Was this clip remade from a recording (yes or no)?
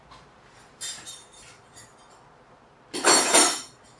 no